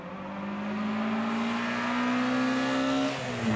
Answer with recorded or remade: recorded